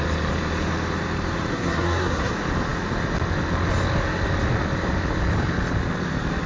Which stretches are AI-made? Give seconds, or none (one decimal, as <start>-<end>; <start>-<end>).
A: 1.5-2.3